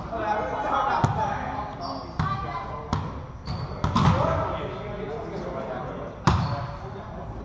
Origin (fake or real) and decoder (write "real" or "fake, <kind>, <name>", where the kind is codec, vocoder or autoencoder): real